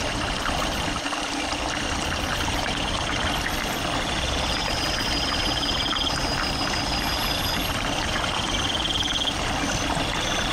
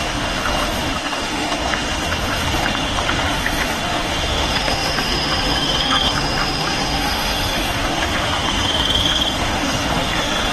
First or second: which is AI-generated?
second